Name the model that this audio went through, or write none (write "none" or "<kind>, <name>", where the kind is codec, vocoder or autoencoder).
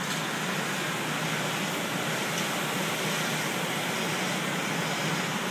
none